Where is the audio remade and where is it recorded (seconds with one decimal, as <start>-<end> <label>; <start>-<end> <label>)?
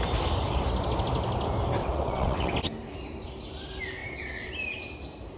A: 0.0-1.8 recorded; 1.8-2.5 remade; 2.5-4.0 recorded; 4.0-4.5 remade; 4.5-5.4 recorded